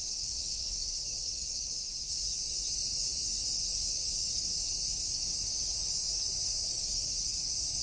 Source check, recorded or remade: remade